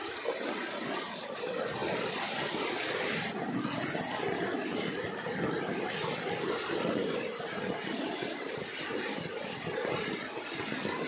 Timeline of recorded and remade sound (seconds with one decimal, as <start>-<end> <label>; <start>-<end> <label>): 0.0-11.1 recorded